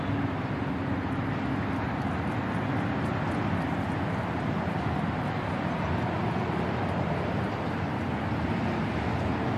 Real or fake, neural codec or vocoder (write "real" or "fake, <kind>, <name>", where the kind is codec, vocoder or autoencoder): real